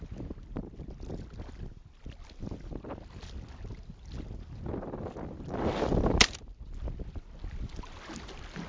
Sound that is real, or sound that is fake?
real